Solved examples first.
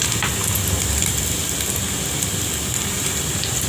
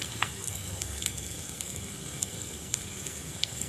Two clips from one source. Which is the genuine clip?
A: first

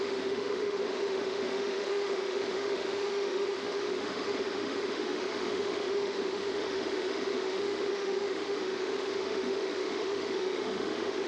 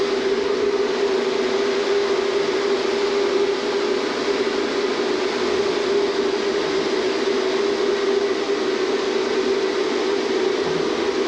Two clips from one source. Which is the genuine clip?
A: second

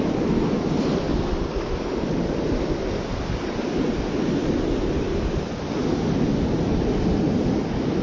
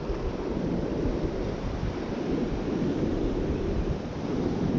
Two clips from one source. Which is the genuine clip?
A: first